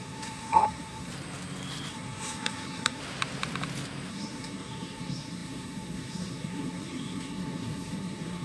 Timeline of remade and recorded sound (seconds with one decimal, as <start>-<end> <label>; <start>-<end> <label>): 0.0-1.1 remade; 1.1-1.9 recorded; 1.9-3.0 remade; 3.0-4.1 recorded; 4.1-8.4 remade